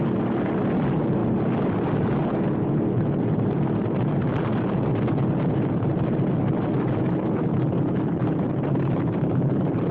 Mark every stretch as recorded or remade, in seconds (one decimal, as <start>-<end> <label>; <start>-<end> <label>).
0.0-9.9 recorded